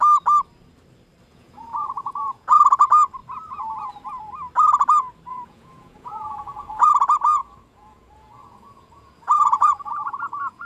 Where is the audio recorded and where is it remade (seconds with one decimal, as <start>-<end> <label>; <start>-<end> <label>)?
0.0-1.3 recorded; 1.3-2.6 remade; 2.6-5.3 recorded; 5.3-6.9 remade; 6.9-7.4 recorded; 7.4-10.7 remade